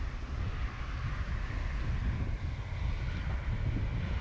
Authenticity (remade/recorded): recorded